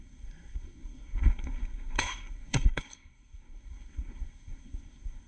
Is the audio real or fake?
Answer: fake